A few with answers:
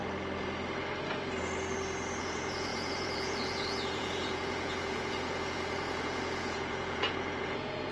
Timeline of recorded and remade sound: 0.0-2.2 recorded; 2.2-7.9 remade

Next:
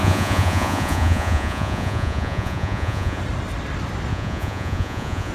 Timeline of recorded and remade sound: 0.0-3.2 remade; 3.2-4.1 recorded; 4.1-5.3 remade

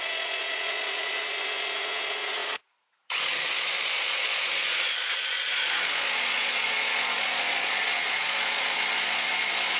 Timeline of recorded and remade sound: 0.0-9.8 remade